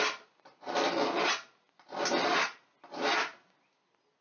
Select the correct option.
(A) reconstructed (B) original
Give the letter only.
B